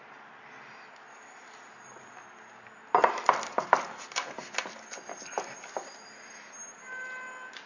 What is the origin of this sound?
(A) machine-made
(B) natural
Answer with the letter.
B